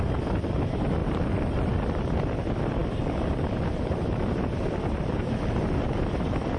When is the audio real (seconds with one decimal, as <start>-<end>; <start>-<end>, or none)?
0.0-6.6